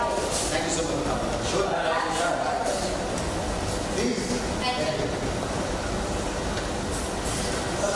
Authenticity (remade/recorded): recorded